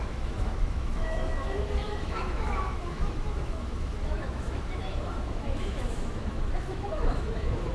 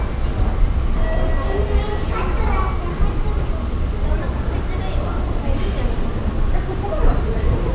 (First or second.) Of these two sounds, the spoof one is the first